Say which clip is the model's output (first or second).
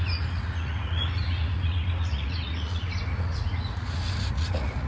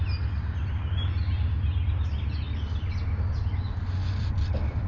first